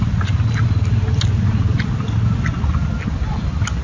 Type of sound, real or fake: real